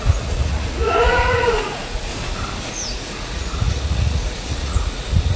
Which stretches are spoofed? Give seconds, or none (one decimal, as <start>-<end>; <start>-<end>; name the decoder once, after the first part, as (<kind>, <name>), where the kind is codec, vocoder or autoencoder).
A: 0.0-2.1 (vocoder, Vocos); 2.7-5.4